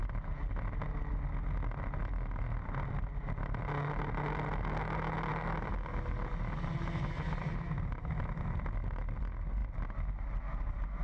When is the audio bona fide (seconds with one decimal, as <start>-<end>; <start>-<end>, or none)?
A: 0.0-11.0